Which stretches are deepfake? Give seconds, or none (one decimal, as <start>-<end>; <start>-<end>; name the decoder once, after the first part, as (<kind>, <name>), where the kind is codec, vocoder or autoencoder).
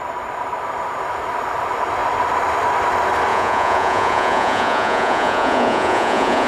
3.3-6.5 (vocoder, Vocos)